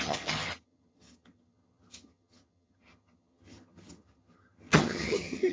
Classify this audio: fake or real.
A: fake